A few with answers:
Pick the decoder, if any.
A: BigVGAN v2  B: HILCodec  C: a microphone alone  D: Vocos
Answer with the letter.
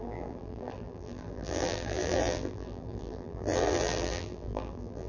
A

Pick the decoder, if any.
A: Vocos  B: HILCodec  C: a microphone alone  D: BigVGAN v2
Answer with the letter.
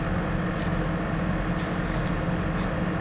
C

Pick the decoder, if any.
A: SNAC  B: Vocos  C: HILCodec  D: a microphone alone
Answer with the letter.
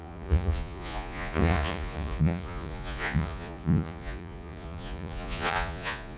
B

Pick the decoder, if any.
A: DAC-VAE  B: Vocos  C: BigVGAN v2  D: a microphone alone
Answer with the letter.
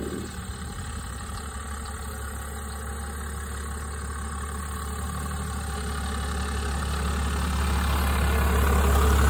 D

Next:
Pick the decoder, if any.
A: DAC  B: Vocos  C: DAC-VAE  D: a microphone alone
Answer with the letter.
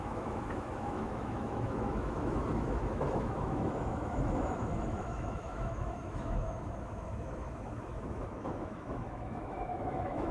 C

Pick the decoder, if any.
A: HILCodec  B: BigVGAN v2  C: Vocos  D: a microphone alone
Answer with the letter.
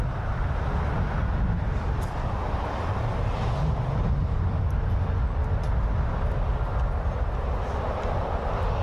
D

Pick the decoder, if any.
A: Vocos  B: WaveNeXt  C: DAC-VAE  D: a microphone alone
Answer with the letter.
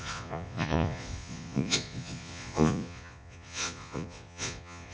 A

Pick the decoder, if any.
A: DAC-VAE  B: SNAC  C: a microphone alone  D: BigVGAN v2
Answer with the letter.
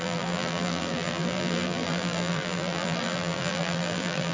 D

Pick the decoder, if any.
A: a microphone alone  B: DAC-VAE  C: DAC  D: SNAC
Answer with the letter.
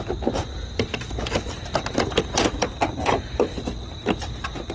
A